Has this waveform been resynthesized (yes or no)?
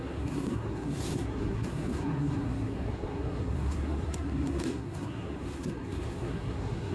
yes